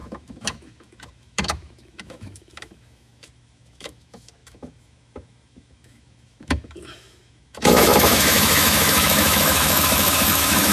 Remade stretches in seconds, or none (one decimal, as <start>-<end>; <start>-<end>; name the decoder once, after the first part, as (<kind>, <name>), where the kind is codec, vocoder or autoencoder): 0.0-10.7 (autoencoder, DAC-VAE)